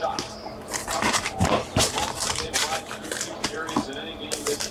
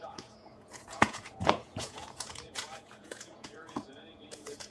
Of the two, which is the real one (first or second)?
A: first